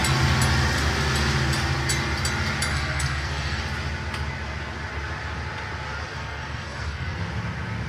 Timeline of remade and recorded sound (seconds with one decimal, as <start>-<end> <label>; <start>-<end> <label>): 0.0-2.7 recorded; 2.7-3.6 remade; 3.6-6.1 recorded; 6.1-7.2 remade; 7.2-7.9 recorded